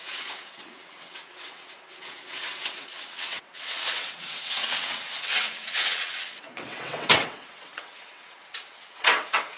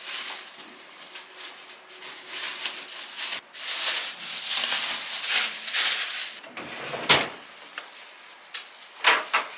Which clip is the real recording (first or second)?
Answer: second